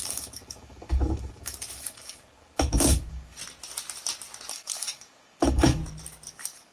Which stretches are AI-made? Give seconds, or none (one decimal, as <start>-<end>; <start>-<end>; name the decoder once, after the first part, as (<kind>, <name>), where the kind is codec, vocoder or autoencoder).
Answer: 0.0-3.4 (codec, DAC); 4.5-5.8; 6.3-6.7